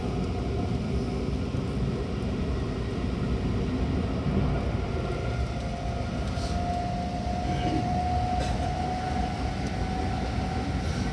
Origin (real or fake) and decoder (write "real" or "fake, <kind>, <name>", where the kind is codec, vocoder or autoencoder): real